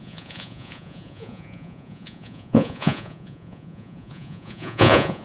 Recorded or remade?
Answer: remade